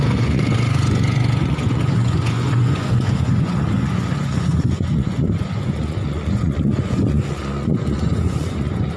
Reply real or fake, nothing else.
fake